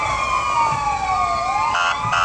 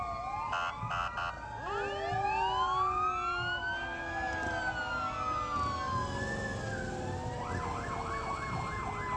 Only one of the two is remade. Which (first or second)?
first